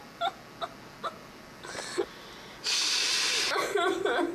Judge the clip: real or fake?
real